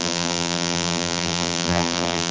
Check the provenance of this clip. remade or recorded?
remade